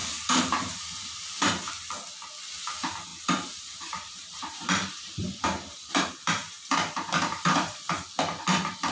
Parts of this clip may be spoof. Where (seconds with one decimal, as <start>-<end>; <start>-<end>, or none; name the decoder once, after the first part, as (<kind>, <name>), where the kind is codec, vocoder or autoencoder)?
0.0-1.7 (vocoder, BigVGAN v2); 3.1-8.1